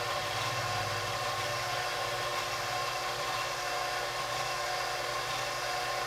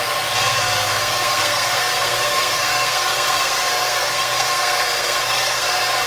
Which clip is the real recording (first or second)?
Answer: first